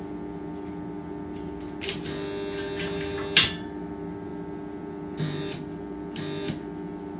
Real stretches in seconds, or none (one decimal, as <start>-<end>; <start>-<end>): 0.0-7.2